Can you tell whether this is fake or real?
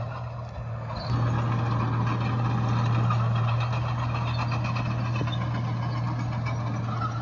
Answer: real